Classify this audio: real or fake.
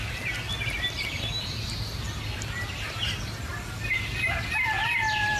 real